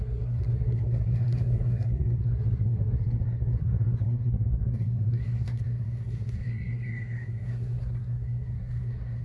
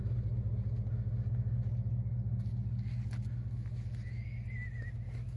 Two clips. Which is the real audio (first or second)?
second